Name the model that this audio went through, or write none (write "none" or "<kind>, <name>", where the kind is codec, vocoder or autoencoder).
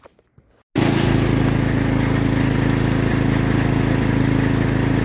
none